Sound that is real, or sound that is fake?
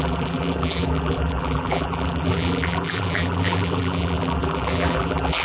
fake